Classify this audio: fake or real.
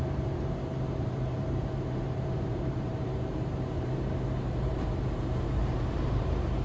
fake